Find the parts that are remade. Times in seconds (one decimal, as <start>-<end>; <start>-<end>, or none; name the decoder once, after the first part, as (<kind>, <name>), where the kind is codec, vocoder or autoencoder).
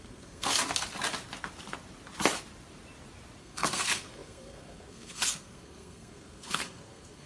0.0-0.5 (codec, SNAC); 3.4-7.3